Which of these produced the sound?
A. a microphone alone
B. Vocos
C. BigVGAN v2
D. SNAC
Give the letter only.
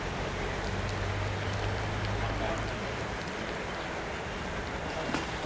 A